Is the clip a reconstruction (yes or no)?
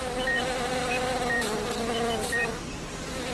no